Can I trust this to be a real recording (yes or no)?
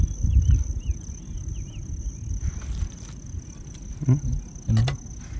yes